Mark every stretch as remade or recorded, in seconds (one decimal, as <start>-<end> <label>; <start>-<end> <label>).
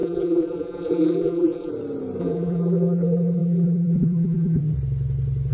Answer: 0.0-1.7 remade; 1.7-2.2 recorded; 2.2-4.6 remade; 4.6-5.5 recorded